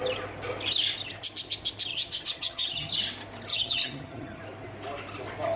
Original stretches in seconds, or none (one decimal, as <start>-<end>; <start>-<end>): 0.0-1.9; 2.9-3.5; 4.4-5.6